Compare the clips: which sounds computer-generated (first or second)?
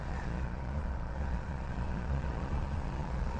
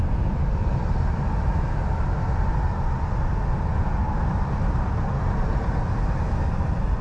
first